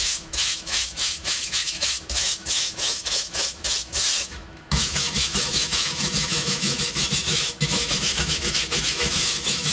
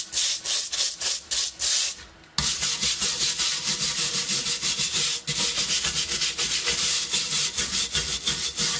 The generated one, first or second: first